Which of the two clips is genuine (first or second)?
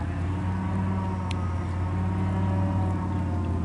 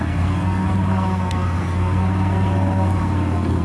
first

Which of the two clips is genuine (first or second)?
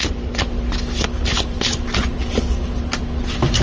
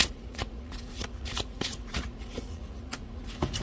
first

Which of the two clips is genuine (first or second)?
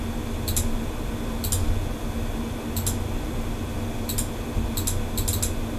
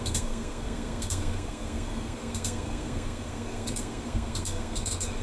first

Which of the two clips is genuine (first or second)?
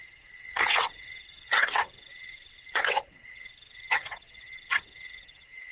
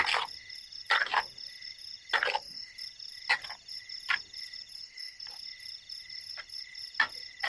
second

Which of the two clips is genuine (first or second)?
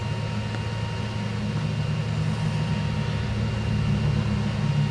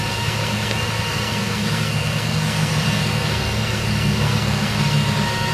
first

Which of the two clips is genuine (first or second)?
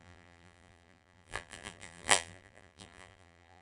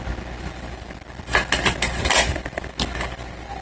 second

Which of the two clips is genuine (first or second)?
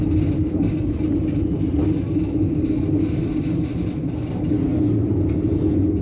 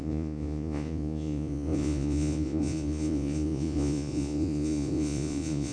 first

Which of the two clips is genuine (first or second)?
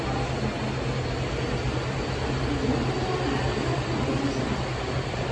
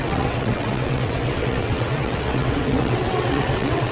first